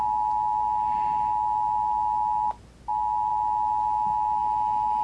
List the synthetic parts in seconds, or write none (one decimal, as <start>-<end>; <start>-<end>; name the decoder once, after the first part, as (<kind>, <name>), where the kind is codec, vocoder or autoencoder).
none